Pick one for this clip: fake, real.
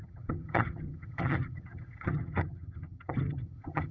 fake